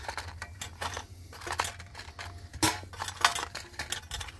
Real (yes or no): yes